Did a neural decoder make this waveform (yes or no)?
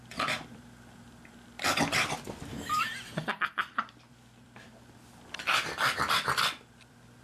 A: yes